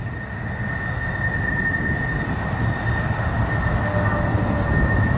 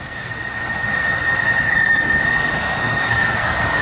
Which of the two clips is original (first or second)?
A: first